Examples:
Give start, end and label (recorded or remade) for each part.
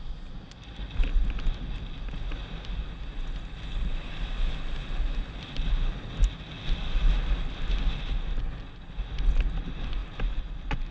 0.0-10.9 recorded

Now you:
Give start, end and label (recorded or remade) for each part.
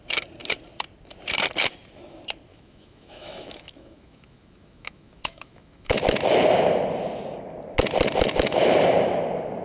0.0-2.5 recorded; 2.5-6.0 remade; 6.0-9.6 recorded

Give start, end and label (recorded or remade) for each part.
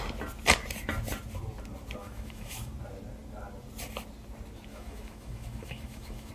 0.0-2.0 recorded; 2.0-2.7 remade; 2.7-4.7 recorded; 4.7-6.3 remade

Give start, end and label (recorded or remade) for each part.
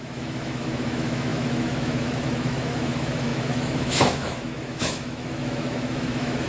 0.0-6.5 remade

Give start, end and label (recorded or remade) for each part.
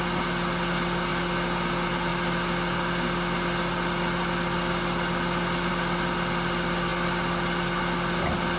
0.0-8.6 recorded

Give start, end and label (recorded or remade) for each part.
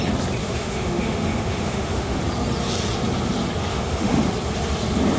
0.0-0.4 recorded; 0.4-2.2 remade; 2.2-3.7 recorded; 3.7-4.3 remade; 4.3-5.2 recorded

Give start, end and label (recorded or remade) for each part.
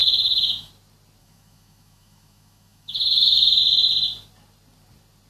0.0-0.7 remade; 0.7-1.2 recorded; 1.2-3.6 remade; 3.6-5.3 recorded